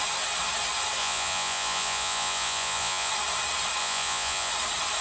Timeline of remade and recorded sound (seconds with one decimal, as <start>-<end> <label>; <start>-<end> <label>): 0.0-1.0 recorded; 1.0-3.1 remade; 3.1-3.8 recorded; 3.8-4.5 remade; 4.5-5.0 recorded